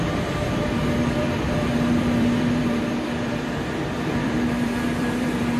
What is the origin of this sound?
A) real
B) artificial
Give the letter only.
B